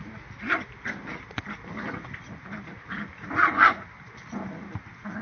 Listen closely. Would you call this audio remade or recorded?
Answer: recorded